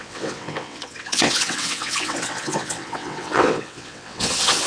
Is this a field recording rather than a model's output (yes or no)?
no